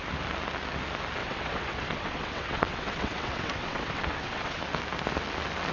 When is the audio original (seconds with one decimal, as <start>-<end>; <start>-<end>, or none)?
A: 0.0-1.2; 4.6-5.7